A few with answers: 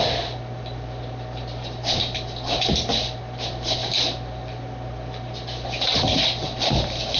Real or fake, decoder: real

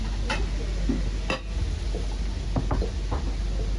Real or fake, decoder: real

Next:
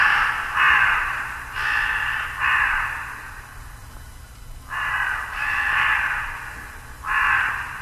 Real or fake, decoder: fake, vocoder, BigVGAN v2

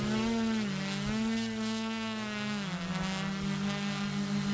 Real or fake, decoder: real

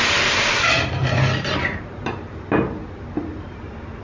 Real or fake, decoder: fake, vocoder, BigVGAN v2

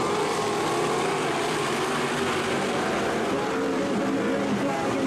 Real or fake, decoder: real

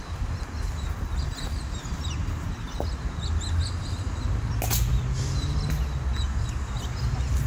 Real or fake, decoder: real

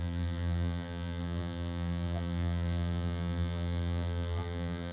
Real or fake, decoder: fake, vocoder, BigVGAN v2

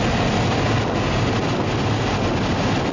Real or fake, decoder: real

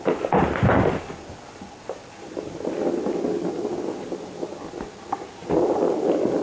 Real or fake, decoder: real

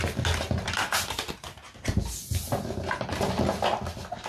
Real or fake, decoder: real